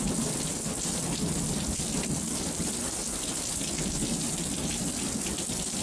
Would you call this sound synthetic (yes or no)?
no